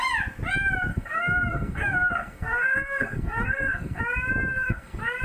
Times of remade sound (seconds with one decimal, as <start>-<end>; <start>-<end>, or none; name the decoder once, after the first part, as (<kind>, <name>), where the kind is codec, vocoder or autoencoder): 0.9-4.0 (codec, SNAC); 4.5-5.2